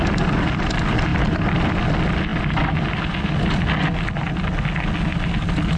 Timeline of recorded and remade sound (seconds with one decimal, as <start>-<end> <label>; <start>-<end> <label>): 0.0-1.1 recorded; 1.1-1.9 remade; 1.9-5.8 recorded

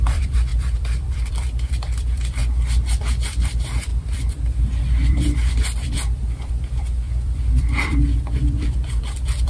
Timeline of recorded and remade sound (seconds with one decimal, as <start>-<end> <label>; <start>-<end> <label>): 0.0-2.4 remade; 2.4-3.0 recorded; 3.0-9.5 remade

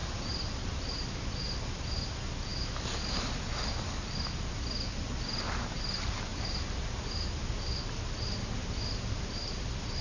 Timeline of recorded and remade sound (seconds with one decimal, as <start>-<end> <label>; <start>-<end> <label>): 0.0-1.3 remade; 1.3-6.3 recorded; 6.3-7.8 remade; 7.8-10.0 recorded

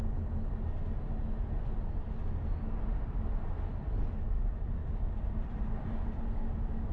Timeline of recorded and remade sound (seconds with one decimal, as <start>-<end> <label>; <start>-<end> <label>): 0.0-4.8 recorded; 4.8-6.2 remade; 6.2-6.9 recorded